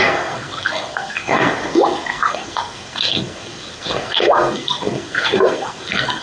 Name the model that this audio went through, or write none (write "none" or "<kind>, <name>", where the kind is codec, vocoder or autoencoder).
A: codec, SNAC